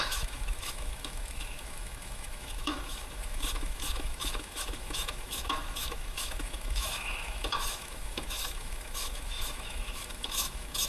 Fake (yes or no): yes